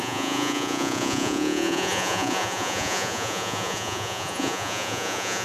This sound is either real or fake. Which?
fake